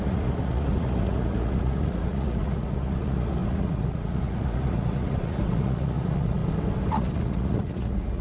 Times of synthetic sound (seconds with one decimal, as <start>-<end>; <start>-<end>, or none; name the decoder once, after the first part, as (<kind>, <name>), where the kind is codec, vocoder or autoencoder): 0.0-6.4 (vocoder, Vocos); 6.9-8.2